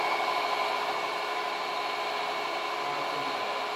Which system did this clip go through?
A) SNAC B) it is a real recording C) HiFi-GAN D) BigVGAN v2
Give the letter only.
B